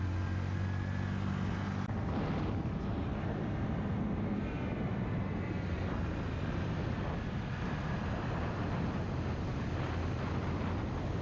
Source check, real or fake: real